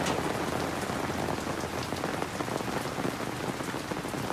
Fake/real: real